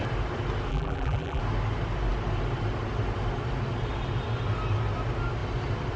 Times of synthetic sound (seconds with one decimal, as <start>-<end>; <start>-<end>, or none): 0.7-1.4